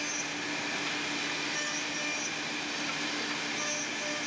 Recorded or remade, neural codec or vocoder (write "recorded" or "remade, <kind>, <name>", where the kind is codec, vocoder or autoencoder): recorded